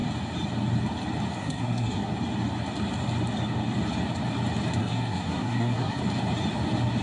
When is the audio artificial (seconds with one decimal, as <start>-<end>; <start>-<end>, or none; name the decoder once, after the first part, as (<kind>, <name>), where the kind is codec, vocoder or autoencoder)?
1.4-2.1 (codec, SNAC); 4.8-6.0